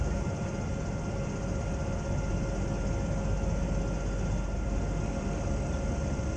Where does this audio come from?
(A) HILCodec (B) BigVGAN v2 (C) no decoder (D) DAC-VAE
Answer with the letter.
C